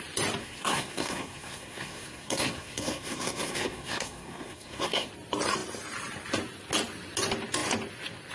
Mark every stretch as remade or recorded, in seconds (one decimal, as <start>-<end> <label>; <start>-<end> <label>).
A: 0.0-0.4 recorded; 0.4-5.1 remade; 5.1-8.3 recorded